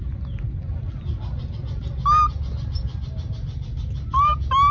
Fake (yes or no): no